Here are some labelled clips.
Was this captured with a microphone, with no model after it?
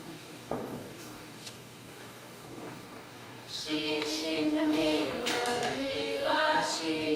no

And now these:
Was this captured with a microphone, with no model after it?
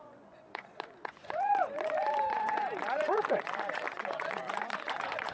no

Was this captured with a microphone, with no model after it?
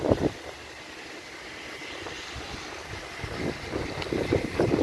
yes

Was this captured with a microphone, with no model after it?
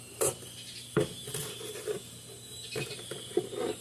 no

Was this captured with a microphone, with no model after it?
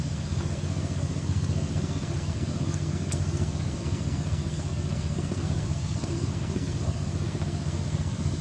no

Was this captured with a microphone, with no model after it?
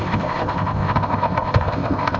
no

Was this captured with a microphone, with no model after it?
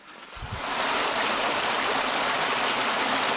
yes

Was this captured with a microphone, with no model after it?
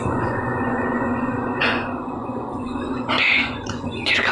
no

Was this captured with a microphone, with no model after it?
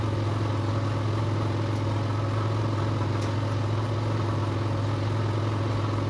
yes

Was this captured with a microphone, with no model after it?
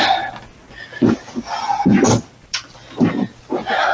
yes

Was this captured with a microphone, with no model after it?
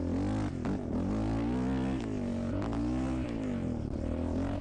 yes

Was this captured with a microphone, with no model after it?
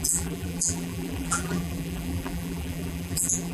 no